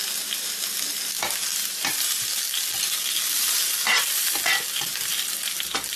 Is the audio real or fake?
real